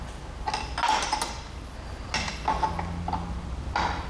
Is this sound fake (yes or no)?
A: no